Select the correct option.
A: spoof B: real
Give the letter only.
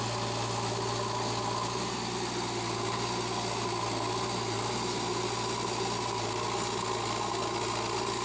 B